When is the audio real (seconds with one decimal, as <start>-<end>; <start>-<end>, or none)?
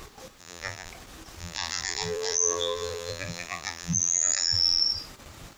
0.0-0.4; 0.9-1.4; 4.8-5.6